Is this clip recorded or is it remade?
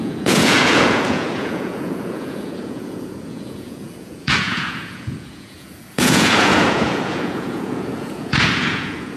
remade